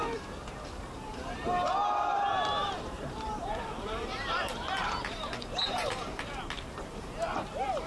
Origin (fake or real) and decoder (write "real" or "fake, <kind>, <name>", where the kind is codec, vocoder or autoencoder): fake, vocoder, BigVGAN v2